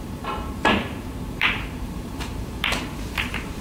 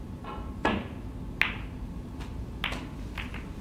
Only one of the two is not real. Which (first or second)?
first